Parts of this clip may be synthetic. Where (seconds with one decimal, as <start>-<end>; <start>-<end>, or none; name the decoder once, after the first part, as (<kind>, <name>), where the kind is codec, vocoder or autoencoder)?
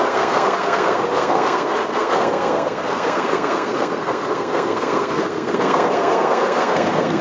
0.0-7.2 (codec, SNAC)